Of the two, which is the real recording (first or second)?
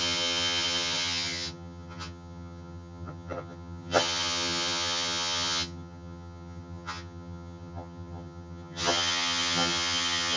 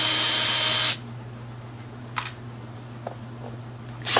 second